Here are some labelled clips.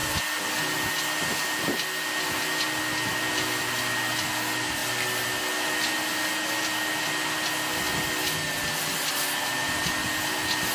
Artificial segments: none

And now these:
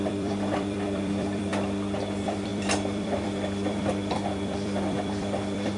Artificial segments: 0.0-1.5; 2.0-5.8

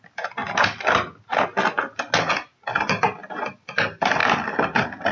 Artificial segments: 4.2-5.1

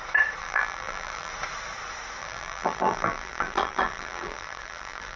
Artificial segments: 0.4-1.3; 2.2-5.2

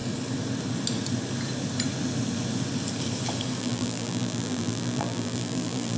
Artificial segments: 3.6-6.0

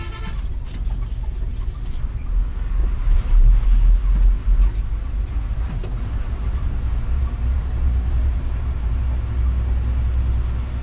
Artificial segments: 2.8-3.5; 5.8-9.0

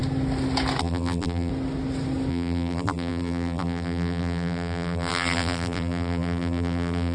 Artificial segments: 0.8-1.5; 2.3-7.1